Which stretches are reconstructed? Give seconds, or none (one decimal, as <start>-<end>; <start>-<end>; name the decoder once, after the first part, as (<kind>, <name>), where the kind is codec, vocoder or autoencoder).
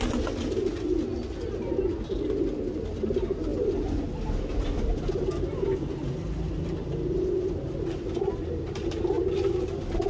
none